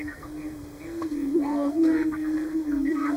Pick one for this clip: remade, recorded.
remade